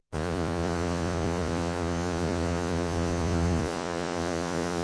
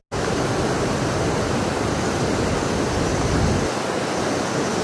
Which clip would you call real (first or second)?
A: second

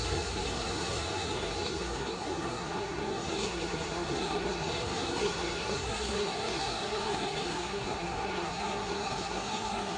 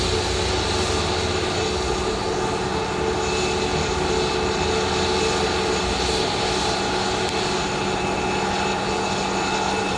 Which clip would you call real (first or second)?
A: second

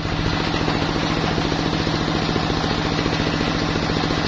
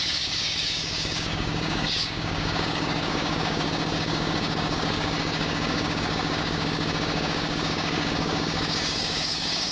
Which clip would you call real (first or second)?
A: first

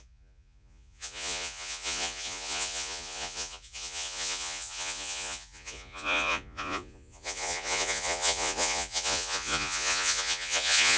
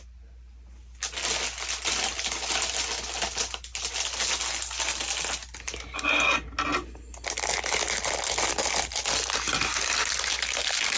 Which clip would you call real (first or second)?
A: second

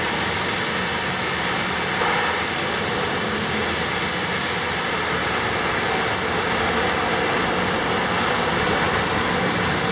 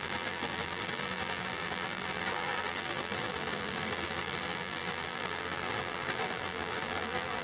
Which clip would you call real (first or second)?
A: first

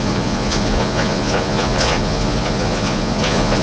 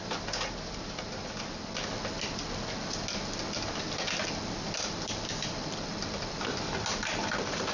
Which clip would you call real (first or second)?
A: second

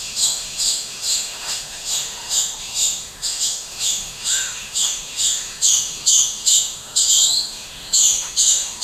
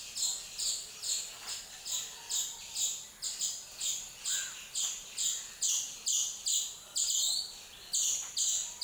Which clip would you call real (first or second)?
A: second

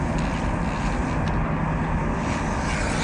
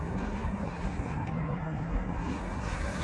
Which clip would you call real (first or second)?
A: first